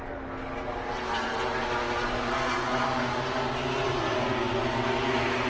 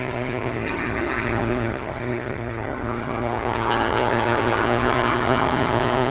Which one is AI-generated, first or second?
second